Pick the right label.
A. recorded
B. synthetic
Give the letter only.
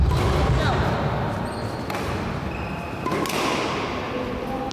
A